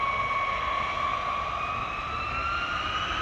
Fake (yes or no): no